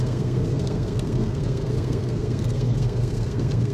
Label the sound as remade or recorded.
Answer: remade